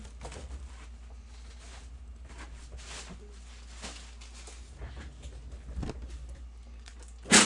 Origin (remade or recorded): recorded